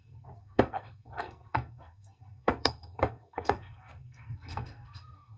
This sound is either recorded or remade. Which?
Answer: remade